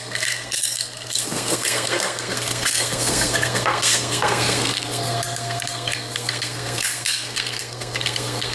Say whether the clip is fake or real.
fake